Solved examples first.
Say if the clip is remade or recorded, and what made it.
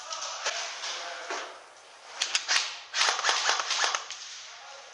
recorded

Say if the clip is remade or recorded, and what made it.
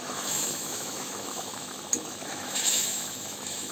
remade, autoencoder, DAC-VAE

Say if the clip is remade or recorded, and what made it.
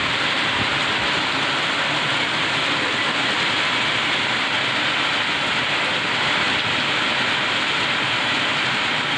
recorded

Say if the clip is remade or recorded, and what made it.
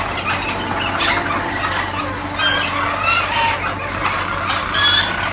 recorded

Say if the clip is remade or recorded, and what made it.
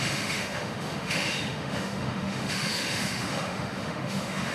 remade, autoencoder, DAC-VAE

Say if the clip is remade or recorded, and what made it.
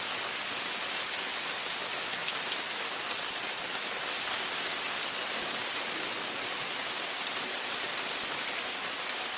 recorded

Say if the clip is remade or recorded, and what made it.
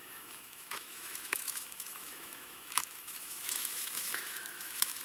remade, autoencoder, DAC-VAE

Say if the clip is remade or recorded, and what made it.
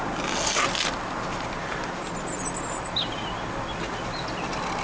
recorded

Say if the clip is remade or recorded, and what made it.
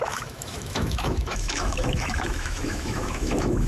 remade, autoencoder, DAC-VAE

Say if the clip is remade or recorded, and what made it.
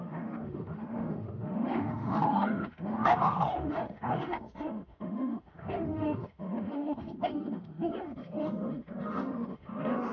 remade, autoencoder, DAC-VAE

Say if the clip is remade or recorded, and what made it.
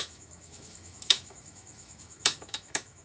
remade, autoencoder, DAC-VAE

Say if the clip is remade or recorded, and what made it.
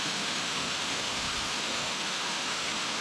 remade, autoencoder, DAC-VAE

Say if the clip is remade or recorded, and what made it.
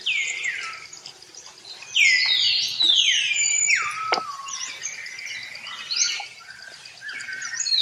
recorded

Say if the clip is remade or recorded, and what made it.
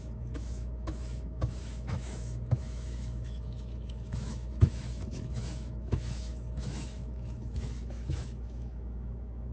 remade, autoencoder, DAC-VAE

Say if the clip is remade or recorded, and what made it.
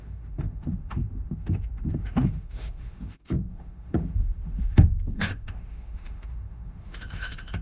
remade, autoencoder, DAC-VAE